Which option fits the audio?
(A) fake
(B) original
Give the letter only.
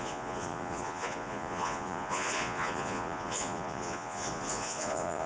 A